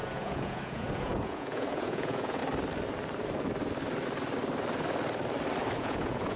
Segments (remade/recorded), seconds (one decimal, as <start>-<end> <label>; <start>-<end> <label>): 0.0-2.4 remade; 2.4-5.8 recorded; 5.8-6.4 remade